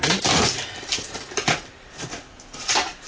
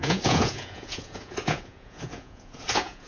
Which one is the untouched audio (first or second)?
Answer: first